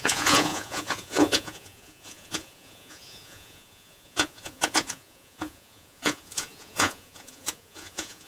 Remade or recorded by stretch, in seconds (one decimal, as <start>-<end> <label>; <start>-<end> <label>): 0.0-8.3 remade